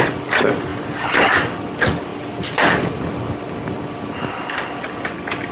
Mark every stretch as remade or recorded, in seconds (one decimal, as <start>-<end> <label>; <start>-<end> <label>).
0.0-5.5 recorded